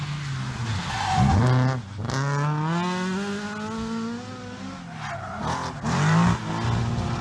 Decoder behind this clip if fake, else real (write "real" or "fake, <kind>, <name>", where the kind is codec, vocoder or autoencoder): real